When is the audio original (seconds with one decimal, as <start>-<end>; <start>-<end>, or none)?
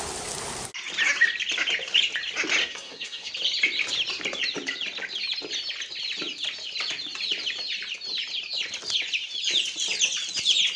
0.0-2.6; 3.3-10.8